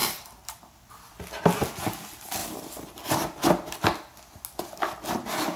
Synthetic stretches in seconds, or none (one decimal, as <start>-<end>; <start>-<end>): 0.0-0.6; 2.4-3.4